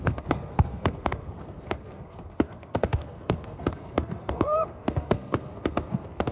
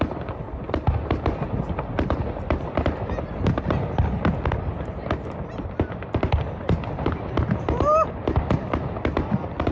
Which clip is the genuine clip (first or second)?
second